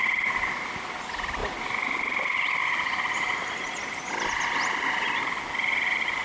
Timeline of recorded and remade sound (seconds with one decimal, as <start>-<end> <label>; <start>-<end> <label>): 0.0-6.2 recorded